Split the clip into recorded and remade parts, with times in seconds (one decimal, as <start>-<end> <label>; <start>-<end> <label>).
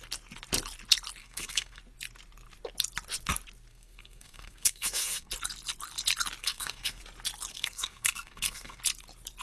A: 0.0-1.2 recorded; 1.2-1.8 remade; 1.8-3.7 recorded; 3.7-5.3 remade; 5.3-6.4 recorded; 6.4-7.0 remade; 7.0-7.5 recorded; 7.5-8.8 remade; 8.8-9.4 recorded